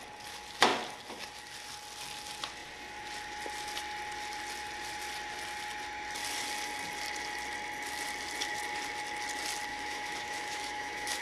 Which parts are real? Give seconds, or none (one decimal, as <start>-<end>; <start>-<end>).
0.0-9.7